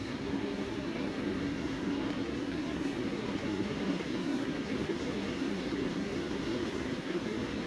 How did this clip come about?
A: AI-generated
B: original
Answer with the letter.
A